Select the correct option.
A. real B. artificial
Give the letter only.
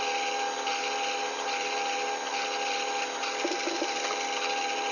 A